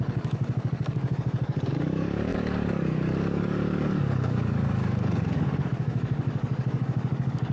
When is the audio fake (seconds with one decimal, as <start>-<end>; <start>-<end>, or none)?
0.0-7.5